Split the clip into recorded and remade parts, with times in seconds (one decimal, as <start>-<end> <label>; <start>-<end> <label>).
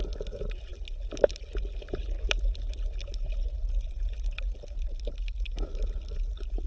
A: 0.0-6.7 recorded